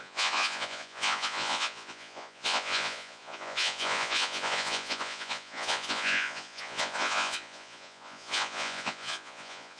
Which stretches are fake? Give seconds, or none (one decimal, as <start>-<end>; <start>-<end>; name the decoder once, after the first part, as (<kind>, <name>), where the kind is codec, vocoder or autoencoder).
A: 0.0-9.8 (vocoder, Vocos)